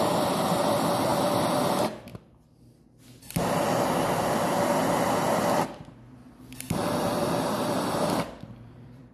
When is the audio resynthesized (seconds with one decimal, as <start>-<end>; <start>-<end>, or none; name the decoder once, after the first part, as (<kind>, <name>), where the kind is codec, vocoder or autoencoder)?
0.0-1.1 (vocoder, BigVGAN v2); 1.7-2.1; 5.8-9.1